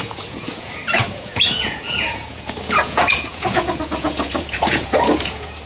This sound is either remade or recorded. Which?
remade